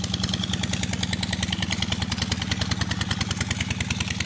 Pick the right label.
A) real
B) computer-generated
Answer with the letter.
A